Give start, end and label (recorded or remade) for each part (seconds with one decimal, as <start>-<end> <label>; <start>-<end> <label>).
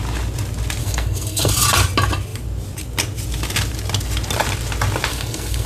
0.0-0.8 recorded; 0.8-1.5 remade; 1.5-5.1 recorded; 5.1-5.7 remade